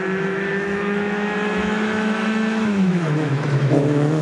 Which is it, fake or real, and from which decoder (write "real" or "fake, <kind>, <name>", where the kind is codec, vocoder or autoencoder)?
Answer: fake, autoencoder, DAC-VAE